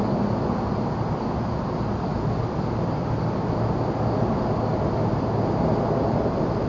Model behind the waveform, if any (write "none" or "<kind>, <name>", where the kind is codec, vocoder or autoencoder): none